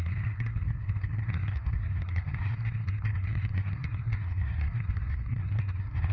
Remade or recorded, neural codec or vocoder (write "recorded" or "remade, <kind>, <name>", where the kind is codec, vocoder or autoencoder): remade, codec, SNAC